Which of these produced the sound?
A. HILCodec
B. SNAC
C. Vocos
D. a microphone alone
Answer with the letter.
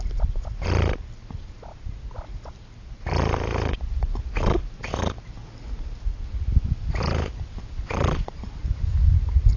D